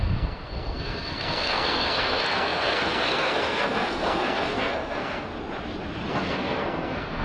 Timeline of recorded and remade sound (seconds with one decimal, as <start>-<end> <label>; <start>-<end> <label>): 0.0-5.3 remade; 5.3-6.1 recorded; 6.1-7.2 remade

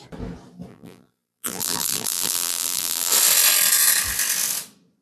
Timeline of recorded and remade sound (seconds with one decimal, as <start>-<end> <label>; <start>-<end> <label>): 0.0-0.7 recorded; 0.7-3.1 remade; 3.1-5.0 recorded